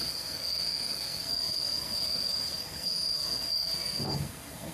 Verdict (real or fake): fake